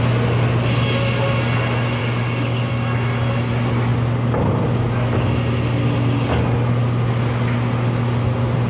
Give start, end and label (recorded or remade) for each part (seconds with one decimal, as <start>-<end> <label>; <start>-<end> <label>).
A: 0.0-2.0 recorded; 2.0-2.7 remade; 2.7-8.7 recorded